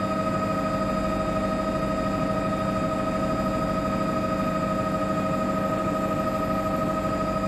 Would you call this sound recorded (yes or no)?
yes